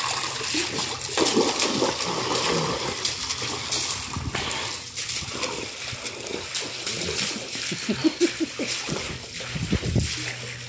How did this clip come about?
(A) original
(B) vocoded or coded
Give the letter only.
A